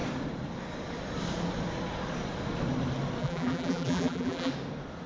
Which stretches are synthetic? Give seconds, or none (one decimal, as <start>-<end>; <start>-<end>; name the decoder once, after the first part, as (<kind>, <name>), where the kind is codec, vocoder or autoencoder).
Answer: 3.2-4.5 (vocoder, BigVGAN v2)